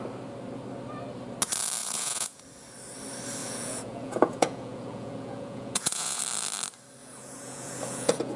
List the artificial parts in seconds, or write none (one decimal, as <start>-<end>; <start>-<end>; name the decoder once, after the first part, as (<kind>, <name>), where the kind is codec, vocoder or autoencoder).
1.8-2.4 (vocoder, Vocos); 3.4-6.2; 7.0-8.4